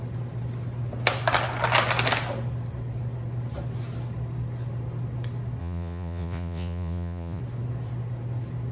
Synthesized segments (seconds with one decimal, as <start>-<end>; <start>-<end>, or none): 5.6-7.4